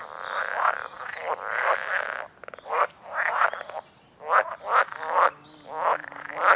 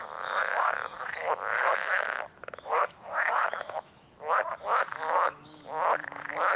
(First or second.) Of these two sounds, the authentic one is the first